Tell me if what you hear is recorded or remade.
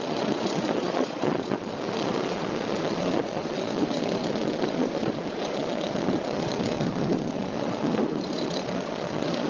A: remade